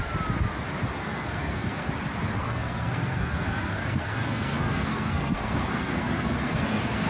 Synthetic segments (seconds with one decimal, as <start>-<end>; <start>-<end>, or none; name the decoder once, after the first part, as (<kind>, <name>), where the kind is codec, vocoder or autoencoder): 1.0-1.9 (codec, SNAC); 2.4-7.1